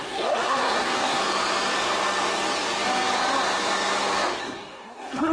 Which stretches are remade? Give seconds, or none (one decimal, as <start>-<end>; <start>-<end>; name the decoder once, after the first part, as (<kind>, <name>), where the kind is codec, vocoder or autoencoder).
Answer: 0.0-1.2 (codec, SNAC); 4.4-5.3